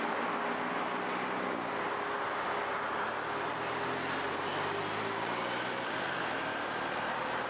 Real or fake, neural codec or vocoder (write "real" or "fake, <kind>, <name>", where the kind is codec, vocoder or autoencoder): real